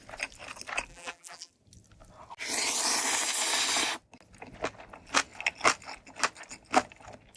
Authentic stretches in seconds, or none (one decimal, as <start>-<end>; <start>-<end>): 0.0-0.9; 1.5-7.4